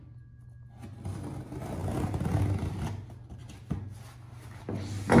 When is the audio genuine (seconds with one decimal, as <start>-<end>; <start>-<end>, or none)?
0.0-5.2